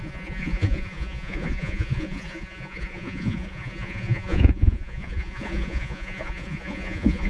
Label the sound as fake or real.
fake